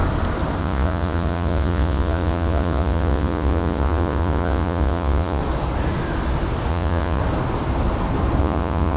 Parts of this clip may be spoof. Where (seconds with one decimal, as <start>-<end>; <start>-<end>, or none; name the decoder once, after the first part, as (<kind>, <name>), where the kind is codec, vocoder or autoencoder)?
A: 0.6-5.4 (vocoder, Vocos); 6.7-7.2; 8.4-9.0

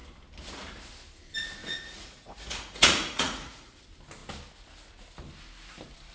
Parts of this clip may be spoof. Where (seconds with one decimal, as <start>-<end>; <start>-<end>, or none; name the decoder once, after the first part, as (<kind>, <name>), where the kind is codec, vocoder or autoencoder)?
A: 1.6-3.8 (vocoder, Vocos)

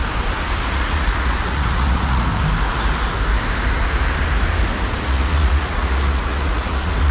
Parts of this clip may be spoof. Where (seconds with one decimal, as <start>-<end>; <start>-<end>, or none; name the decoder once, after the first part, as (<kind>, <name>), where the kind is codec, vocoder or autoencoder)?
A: 0.7-2.3 (vocoder, Vocos); 5.0-7.1

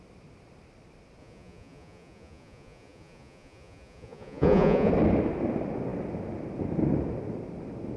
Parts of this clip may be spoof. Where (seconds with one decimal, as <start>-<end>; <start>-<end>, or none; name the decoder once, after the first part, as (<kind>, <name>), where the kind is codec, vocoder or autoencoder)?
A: 1.2-4.9 (vocoder, Vocos)

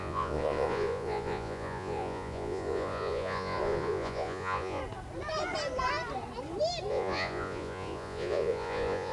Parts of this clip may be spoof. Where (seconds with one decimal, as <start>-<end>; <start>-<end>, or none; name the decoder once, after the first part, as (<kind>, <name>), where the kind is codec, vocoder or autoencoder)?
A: 0.0-4.8 (vocoder, Vocos); 6.9-9.1

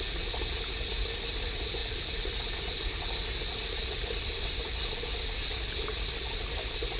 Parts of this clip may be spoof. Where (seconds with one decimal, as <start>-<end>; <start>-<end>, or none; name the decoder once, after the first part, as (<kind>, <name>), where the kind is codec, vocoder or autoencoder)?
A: none

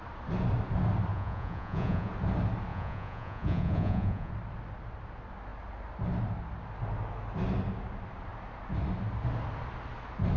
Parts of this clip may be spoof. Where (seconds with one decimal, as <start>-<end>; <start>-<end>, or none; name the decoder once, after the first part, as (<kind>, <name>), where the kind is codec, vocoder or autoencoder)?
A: 1.1-2.1 (vocoder, Vocos); 2.7-4.3

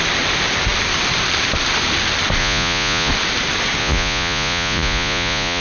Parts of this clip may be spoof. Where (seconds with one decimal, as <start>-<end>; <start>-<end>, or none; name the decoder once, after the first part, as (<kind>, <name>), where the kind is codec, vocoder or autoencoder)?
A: 2.4-3.1 (vocoder, Vocos); 3.8-5.6